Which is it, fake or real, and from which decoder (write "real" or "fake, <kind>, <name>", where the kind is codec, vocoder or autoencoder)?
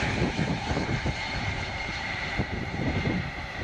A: fake, vocoder, BigVGAN v2